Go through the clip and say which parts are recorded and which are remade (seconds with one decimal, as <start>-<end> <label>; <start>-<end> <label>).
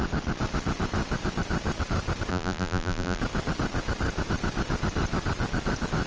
0.0-2.3 recorded; 2.3-3.2 remade; 3.2-6.1 recorded